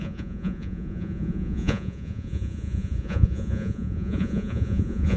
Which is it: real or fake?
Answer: fake